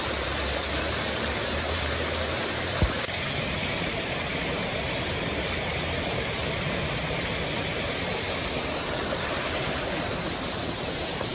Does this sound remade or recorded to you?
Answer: remade